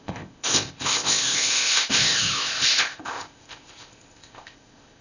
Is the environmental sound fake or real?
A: fake